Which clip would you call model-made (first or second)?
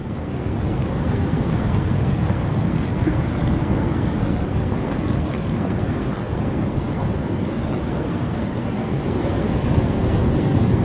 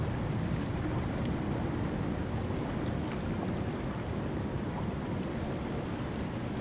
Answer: first